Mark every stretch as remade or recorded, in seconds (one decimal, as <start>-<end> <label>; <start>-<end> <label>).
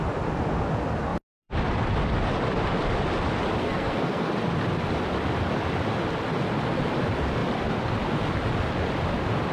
0.0-3.6 recorded; 3.6-4.3 remade; 4.3-9.5 recorded